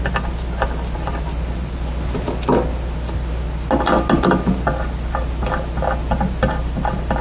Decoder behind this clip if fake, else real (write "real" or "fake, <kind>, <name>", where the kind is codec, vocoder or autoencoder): real